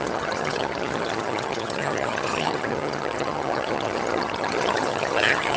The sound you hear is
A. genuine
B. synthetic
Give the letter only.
B